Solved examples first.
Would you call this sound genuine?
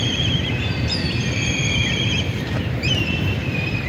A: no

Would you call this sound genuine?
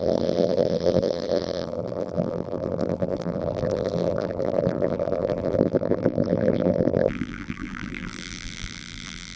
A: no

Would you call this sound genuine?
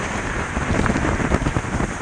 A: no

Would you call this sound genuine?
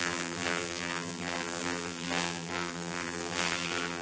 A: no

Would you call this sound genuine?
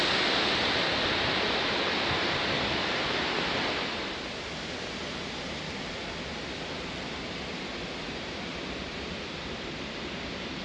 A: yes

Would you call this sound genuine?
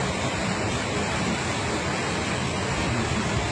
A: yes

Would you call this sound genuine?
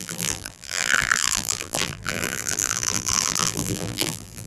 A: no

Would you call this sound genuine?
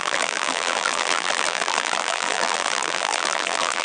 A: no